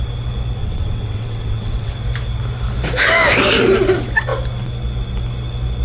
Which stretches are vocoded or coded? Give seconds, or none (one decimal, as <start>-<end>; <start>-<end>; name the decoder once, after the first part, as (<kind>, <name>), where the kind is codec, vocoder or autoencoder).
0.6-1.9 (vocoder, WaveNeXt)